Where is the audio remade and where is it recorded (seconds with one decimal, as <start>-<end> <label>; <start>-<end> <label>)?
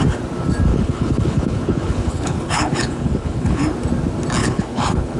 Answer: 0.0-0.7 recorded; 0.7-3.6 remade; 3.6-4.4 recorded; 4.4-5.2 remade